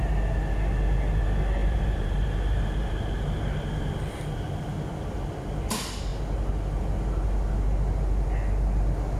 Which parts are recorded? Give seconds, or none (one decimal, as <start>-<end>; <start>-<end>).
0.0-1.6; 3.9-9.2